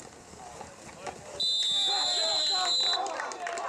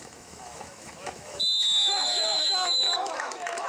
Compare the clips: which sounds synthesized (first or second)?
second